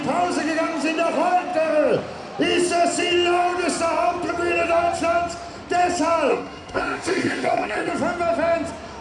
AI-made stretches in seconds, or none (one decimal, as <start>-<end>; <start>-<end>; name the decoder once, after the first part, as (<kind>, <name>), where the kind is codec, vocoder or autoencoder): 6.3-7.9 (codec, SNAC)